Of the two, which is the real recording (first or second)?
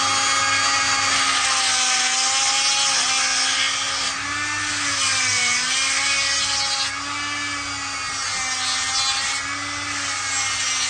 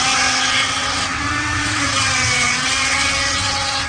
first